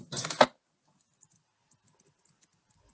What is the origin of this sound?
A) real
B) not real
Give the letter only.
A